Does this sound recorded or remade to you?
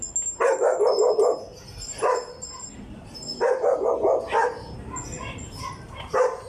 recorded